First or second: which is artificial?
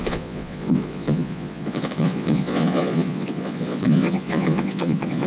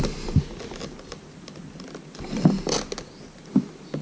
first